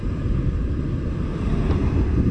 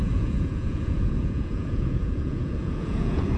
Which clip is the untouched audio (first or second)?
first